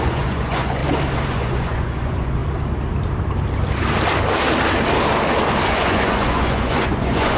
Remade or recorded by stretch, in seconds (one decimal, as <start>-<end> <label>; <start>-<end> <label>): 0.0-0.8 remade; 0.8-1.3 recorded; 1.3-2.4 remade; 2.4-5.7 recorded; 5.7-7.4 remade